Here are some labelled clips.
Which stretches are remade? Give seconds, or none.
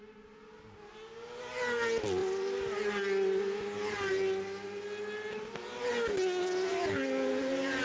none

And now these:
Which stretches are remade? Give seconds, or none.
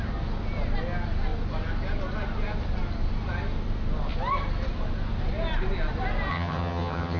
6.3-7.2 (vocoder, HiFi-GAN)